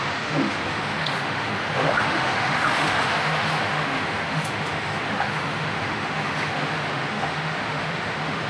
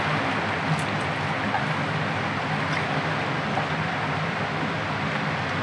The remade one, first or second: first